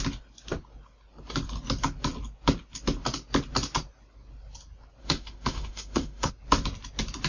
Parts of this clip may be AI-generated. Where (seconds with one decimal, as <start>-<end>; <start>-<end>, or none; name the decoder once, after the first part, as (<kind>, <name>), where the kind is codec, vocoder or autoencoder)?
5.0-6.3 (autoencoder, DAC-VAE)